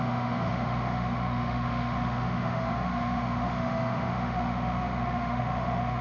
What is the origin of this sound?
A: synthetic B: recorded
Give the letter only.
A